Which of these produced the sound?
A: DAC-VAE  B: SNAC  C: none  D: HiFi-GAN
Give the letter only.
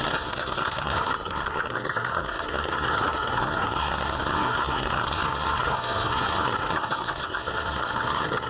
B